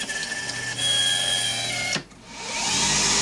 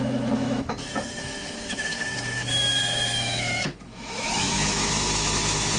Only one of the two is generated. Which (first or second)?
second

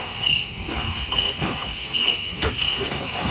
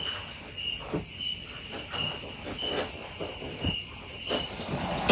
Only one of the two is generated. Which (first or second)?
first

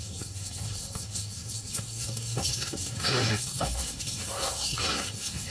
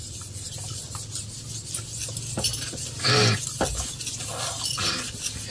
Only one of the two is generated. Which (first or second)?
first